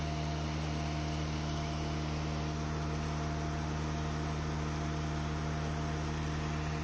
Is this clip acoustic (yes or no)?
yes